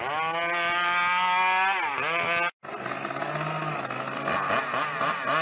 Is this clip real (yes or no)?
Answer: yes